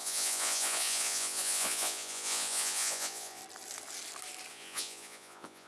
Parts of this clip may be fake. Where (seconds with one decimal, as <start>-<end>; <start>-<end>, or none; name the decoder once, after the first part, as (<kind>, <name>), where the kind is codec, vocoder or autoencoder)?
0.0-3.4 (vocoder, Vocos); 4.5-5.7

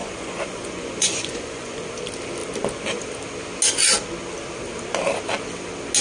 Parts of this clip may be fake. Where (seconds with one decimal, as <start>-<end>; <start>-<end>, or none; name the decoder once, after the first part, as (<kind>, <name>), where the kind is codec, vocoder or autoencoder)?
0.0-1.9 (vocoder, Vocos)

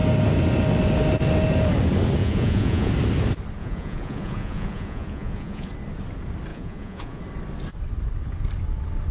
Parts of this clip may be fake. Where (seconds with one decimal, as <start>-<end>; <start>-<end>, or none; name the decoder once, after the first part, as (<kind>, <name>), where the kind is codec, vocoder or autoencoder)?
2.2-2.9 (vocoder, Vocos); 3.6-5.7; 6.5-7.2

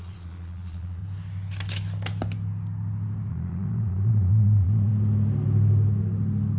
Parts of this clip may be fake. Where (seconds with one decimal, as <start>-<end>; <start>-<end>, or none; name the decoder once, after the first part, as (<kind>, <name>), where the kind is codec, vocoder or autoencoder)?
0.0-1.0 (vocoder, Vocos); 3.3-4.9

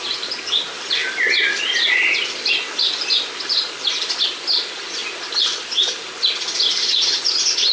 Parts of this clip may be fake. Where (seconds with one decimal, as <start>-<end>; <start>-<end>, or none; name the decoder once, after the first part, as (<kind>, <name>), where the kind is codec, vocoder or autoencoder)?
none

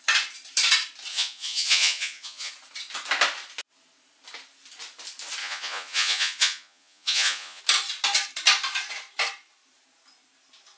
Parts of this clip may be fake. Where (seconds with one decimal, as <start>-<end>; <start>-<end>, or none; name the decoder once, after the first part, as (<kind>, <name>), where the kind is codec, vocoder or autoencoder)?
1.1-2.5 (vocoder, Vocos); 5.4-7.6

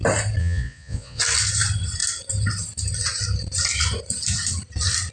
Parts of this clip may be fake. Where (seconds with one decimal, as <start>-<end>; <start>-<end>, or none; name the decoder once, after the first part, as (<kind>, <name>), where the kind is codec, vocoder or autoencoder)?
0.4-1.2 (vocoder, Vocos)